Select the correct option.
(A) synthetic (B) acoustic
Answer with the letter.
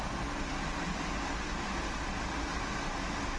B